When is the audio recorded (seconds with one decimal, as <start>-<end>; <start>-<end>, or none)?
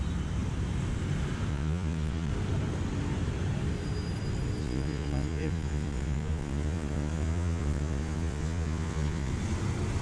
0.0-1.5; 2.3-4.6; 9.3-10.0